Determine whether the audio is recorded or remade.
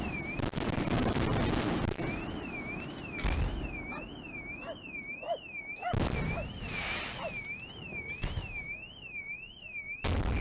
recorded